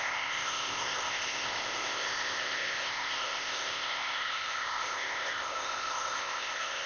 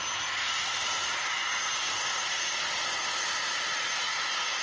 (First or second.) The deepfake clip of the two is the first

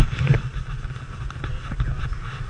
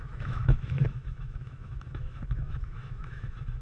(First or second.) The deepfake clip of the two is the second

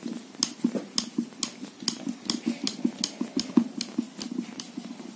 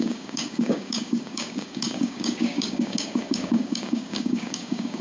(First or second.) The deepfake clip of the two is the second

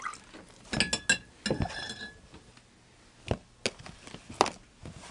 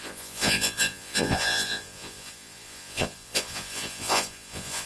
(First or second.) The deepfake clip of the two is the second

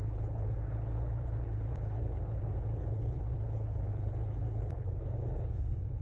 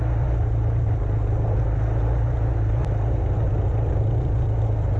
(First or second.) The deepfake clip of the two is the first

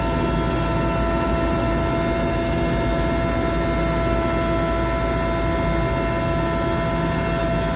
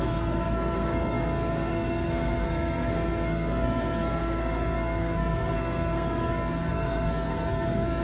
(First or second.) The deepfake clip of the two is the second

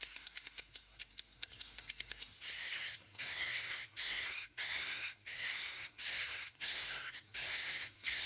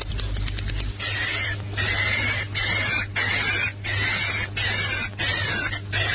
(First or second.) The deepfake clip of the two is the first